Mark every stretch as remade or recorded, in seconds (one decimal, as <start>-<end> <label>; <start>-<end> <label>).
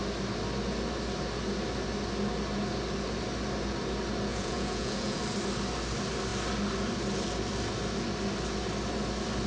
0.0-4.3 recorded; 4.3-5.2 remade; 5.2-9.5 recorded